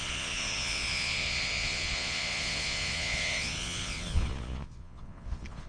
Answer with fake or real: fake